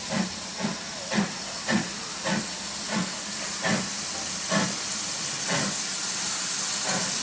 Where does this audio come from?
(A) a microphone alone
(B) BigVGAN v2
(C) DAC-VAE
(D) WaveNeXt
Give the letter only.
A